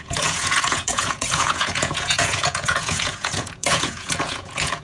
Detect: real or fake fake